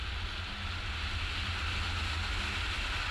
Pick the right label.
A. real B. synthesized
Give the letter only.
A